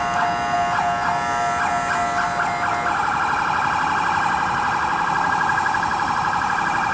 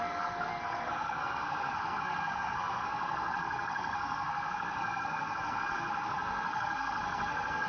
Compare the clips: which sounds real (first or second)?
first